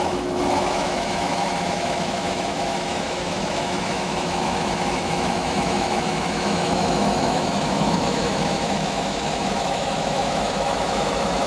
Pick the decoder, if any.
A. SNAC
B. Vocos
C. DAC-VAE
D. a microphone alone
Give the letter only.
C